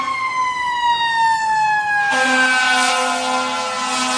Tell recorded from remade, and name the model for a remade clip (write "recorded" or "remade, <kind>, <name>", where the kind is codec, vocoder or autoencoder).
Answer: recorded